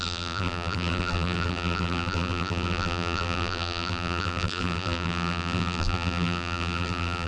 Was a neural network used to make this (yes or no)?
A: yes